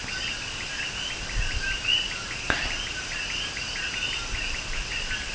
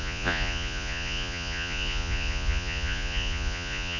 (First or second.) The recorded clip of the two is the first